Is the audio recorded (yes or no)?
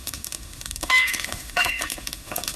no